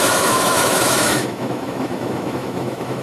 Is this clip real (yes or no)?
no